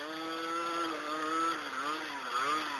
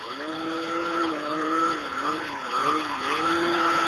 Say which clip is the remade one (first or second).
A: second